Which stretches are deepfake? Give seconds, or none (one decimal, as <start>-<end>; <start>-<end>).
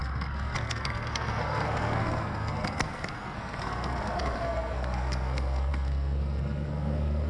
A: 0.0-7.3